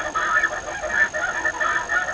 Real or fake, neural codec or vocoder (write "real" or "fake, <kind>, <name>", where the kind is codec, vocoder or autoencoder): real